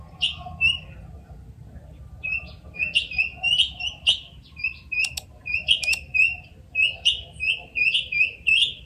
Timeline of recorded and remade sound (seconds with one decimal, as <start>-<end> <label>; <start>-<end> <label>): 0.0-8.9 recorded

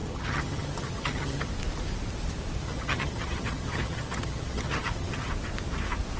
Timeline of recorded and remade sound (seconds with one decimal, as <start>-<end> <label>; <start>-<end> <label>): 0.0-1.5 remade; 1.5-2.6 recorded; 2.6-5.3 remade; 5.3-6.2 recorded